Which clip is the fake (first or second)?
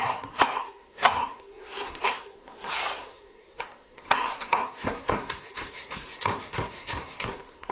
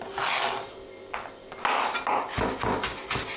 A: first